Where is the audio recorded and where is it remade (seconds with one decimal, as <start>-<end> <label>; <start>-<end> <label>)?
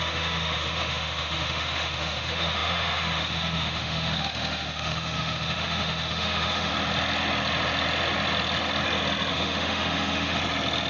0.0-6.7 remade; 6.7-9.3 recorded; 9.3-10.4 remade; 10.4-10.9 recorded